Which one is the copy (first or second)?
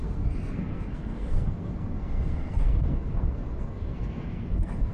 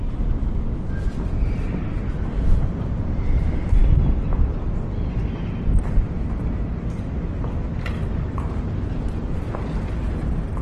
first